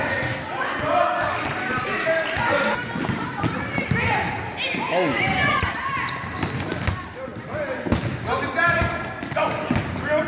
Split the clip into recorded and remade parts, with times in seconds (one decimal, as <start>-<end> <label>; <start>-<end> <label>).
0.0-1.0 recorded; 1.0-1.7 remade; 1.7-10.3 recorded